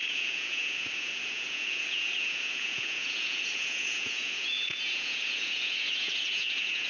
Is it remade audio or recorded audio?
remade